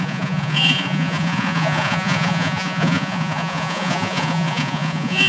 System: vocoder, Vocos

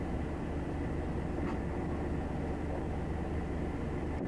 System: none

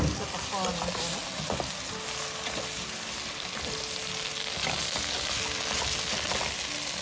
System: none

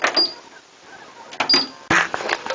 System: none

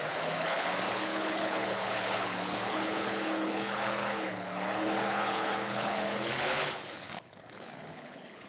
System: codec, HILCodec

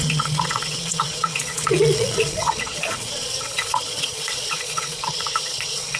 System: vocoder, Vocos